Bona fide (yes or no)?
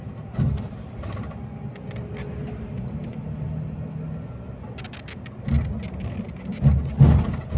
yes